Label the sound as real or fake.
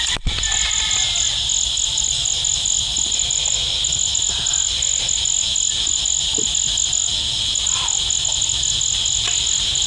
real